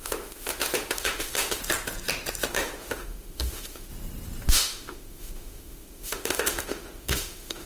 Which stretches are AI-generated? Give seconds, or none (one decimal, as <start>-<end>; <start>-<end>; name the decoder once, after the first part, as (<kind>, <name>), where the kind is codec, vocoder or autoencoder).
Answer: 0.0-1.6 (autoencoder, DAC-VAE); 2.5-3.9; 4.5-7.7

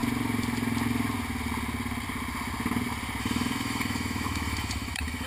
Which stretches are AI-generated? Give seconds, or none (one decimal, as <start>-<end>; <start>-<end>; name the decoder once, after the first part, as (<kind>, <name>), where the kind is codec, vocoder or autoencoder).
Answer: 3.2-5.3 (autoencoder, DAC-VAE)

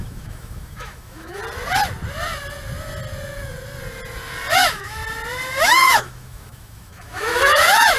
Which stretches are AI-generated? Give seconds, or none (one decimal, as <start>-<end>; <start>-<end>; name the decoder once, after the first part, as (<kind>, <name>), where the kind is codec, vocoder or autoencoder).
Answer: 0.0-1.4 (autoencoder, DAC-VAE); 4.5-5.0; 5.6-8.0

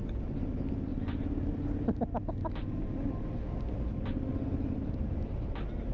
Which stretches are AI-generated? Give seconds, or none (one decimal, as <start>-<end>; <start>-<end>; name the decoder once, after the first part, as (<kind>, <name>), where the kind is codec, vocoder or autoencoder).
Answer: none